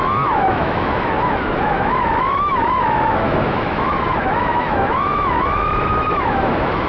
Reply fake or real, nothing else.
fake